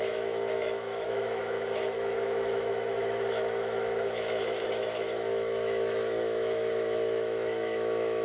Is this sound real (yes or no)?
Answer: no